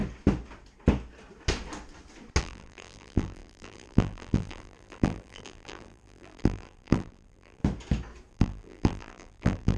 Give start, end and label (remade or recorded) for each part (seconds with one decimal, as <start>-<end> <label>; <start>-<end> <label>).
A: 0.0-2.4 recorded; 2.4-7.6 remade; 7.6-8.3 recorded; 8.3-9.8 remade